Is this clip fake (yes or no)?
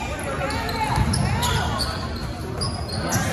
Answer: no